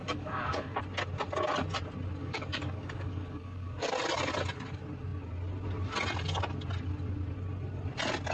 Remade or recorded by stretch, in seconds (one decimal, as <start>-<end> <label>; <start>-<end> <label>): 0.0-0.8 remade; 0.8-2.2 recorded; 2.2-3.9 remade; 3.9-8.3 recorded

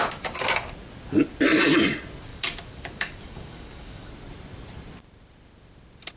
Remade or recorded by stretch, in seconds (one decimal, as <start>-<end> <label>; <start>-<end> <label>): 0.0-2.3 recorded; 2.3-4.1 remade; 4.1-6.2 recorded

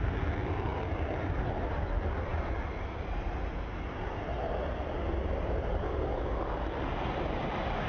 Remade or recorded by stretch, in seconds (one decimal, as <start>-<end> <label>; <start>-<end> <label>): 0.0-7.9 recorded

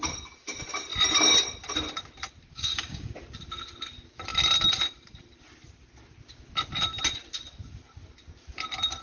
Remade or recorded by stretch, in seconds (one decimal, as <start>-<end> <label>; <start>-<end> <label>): 0.0-2.5 recorded; 2.5-3.1 remade; 3.1-9.0 recorded

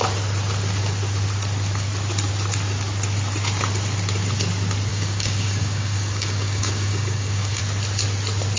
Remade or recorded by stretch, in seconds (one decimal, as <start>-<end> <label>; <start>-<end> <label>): 0.0-4.9 recorded; 4.9-7.6 remade; 7.6-8.6 recorded

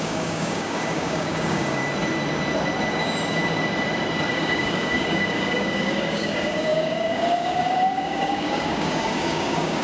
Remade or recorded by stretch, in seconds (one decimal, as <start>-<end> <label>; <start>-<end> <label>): 0.0-1.8 remade; 1.8-2.9 recorded; 2.9-3.4 remade; 3.4-4.3 recorded; 4.3-9.8 remade

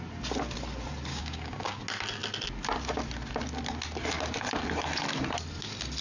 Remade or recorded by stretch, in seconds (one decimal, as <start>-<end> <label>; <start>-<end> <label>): 0.0-1.1 recorded; 1.1-1.8 remade; 1.8-6.0 recorded

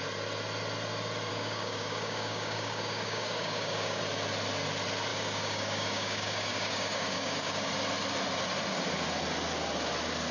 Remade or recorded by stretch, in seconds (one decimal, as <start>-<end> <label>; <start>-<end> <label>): 0.0-1.3 recorded; 1.3-4.0 remade; 4.0-5.1 recorded; 5.1-7.7 remade; 7.7-10.3 recorded